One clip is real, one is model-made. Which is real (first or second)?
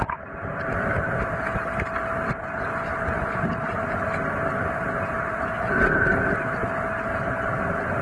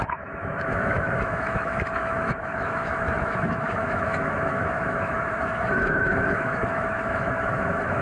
first